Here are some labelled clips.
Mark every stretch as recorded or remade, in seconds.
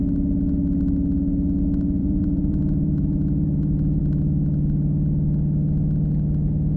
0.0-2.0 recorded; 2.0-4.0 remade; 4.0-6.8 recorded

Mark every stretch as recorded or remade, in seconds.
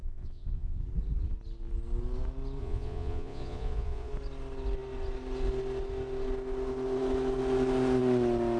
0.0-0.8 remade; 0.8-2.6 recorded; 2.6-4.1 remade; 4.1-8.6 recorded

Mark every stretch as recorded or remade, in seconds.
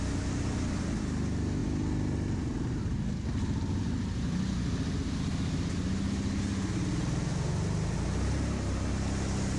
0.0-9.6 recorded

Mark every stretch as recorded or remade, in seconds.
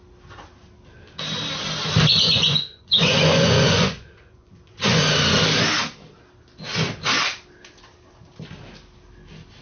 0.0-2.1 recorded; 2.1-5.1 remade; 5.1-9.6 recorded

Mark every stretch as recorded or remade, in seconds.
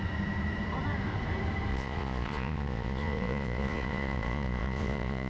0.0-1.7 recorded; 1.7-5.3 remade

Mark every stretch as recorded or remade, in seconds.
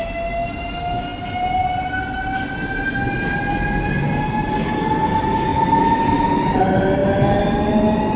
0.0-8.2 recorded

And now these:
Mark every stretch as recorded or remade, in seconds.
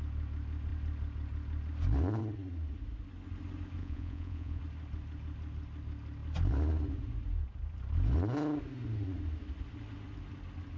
0.0-3.8 recorded; 3.8-4.6 remade; 4.6-10.8 recorded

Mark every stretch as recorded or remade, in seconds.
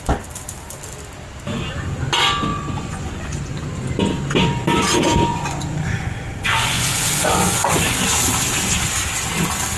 0.0-2.5 recorded; 2.5-3.7 remade; 3.7-5.3 recorded; 5.3-8.0 remade; 8.0-9.8 recorded